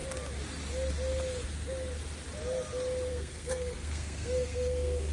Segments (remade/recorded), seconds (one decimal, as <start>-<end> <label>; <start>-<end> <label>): 0.0-3.1 recorded; 3.1-5.1 remade